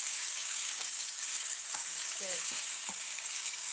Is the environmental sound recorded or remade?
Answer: remade